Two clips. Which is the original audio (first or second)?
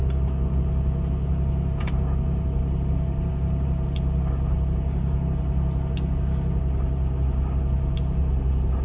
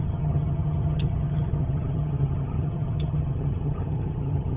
first